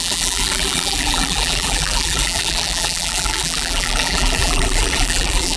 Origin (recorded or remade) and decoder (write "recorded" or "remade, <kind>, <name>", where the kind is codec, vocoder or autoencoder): remade, vocoder, BigVGAN v2